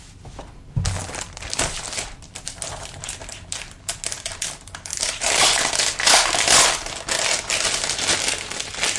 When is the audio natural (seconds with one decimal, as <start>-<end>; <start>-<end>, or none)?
0.0-4.9; 5.7-9.0

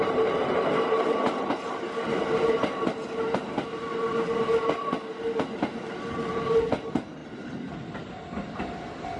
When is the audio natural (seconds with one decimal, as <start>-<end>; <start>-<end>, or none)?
0.0-9.2

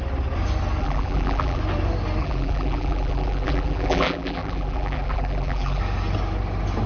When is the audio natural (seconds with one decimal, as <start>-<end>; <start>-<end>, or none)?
0.0-0.8; 1.6-2.2; 5.8-6.9

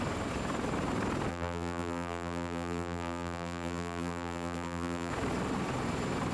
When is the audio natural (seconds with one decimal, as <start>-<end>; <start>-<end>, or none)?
0.0-1.3; 5.1-6.3

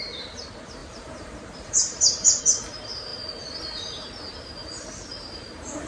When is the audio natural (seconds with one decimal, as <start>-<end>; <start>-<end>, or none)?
0.0-0.8; 2.4-5.9

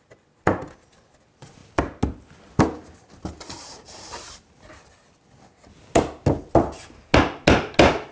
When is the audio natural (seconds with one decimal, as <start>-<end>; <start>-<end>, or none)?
0.0-8.1

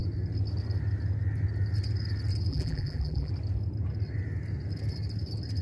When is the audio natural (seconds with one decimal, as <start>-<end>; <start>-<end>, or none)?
0.0-2.5; 3.3-5.6